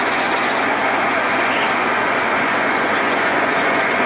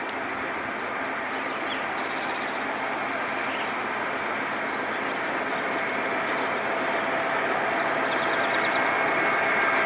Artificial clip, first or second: first